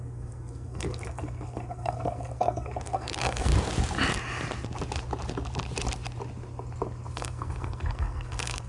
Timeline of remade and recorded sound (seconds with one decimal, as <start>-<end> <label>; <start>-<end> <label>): 0.0-3.5 remade; 3.5-7.1 recorded; 7.1-8.7 remade